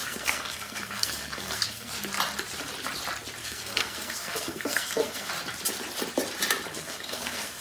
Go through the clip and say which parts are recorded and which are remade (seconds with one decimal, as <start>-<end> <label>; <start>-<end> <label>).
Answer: 0.0-1.9 remade; 1.9-3.4 recorded; 3.4-5.3 remade; 5.3-6.7 recorded; 6.7-7.6 remade